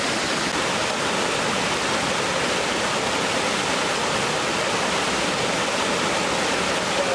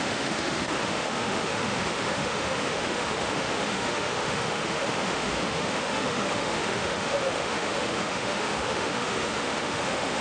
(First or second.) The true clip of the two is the first